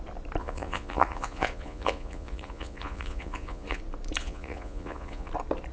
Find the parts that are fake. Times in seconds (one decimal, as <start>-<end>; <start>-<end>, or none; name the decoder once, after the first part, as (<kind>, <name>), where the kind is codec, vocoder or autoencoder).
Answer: 0.4-3.8 (vocoder, Vocos); 4.2-5.3

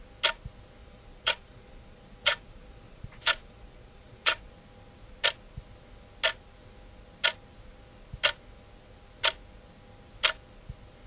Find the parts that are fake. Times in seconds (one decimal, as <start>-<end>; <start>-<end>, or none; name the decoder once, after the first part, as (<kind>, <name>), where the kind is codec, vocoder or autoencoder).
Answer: 0.8-4.5 (vocoder, Vocos)

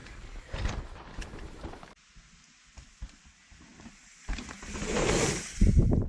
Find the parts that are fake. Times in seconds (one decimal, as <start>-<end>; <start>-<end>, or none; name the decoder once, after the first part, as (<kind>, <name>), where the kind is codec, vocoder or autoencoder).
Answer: none

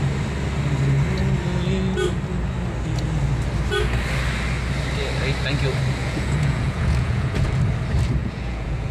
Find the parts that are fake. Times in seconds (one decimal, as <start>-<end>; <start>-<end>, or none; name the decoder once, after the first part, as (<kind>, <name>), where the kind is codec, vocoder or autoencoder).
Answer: 6.0-7.6 (vocoder, Vocos); 8.2-8.9

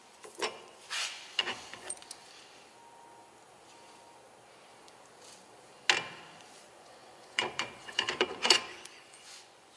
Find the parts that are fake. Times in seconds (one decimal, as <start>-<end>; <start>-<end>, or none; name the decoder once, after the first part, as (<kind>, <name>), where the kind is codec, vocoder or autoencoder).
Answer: 0.0-2.0 (vocoder, Vocos); 6.6-9.8

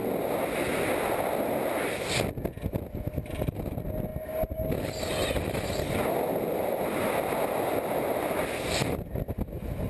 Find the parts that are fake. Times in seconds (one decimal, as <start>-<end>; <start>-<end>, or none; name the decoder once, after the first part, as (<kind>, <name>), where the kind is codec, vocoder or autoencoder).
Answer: none